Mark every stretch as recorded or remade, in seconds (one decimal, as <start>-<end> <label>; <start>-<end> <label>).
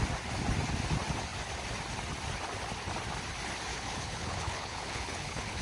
0.0-3.7 recorded; 3.7-5.6 remade